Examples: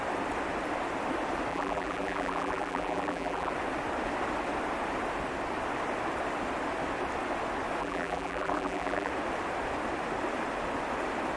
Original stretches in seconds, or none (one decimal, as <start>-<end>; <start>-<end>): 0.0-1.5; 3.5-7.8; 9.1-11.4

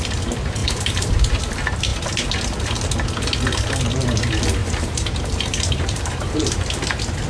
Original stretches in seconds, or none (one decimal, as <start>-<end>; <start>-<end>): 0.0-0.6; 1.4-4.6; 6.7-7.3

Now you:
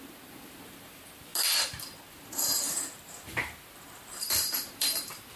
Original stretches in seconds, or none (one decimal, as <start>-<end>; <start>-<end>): 1.3-2.1

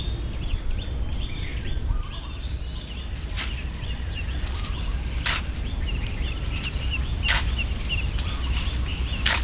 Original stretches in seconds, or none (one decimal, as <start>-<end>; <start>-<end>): 4.9-5.8

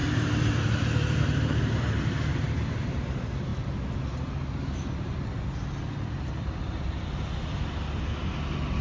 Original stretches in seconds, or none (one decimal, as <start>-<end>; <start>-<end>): 3.5-8.8

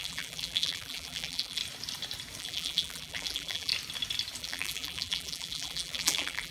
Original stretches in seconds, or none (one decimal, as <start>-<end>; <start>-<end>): 1.6-2.4; 3.7-4.4